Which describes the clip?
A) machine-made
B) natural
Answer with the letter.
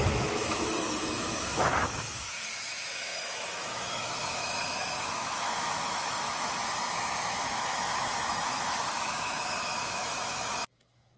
A